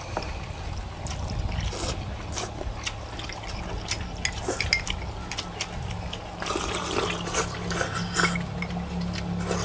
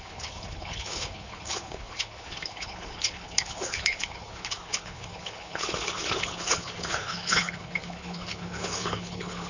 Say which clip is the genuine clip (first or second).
first